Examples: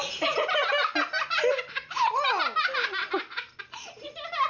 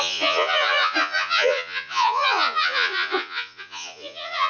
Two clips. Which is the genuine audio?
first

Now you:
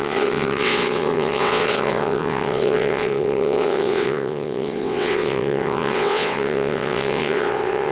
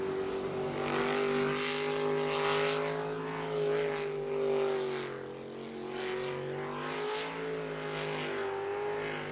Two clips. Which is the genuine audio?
second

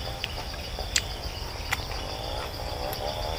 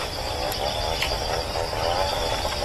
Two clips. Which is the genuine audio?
first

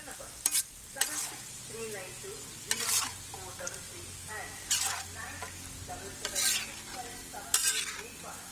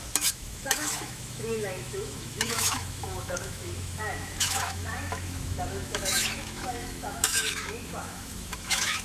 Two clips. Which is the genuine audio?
first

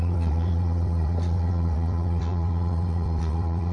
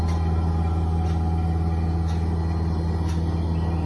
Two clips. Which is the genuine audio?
second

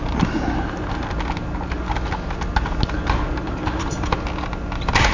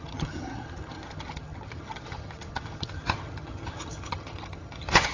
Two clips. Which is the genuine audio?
first